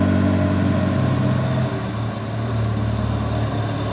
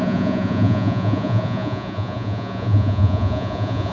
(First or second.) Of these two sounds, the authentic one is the first